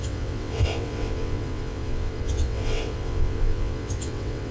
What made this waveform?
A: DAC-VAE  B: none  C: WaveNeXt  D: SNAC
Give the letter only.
C